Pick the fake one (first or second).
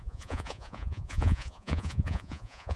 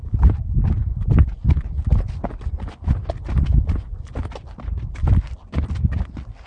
first